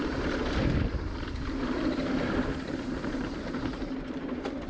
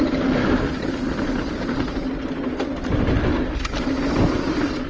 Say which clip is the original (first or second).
second